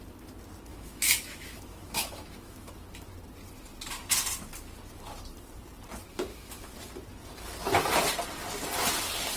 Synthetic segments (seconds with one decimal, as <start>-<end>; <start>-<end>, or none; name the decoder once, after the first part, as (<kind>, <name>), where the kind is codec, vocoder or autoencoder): 0.7-2.7 (autoencoder, DAC-VAE); 6.3-6.8